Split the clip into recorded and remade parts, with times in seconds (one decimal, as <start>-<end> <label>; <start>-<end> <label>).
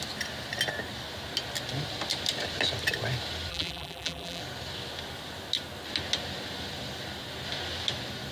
0.0-3.5 recorded; 3.5-4.4 remade; 4.4-8.3 recorded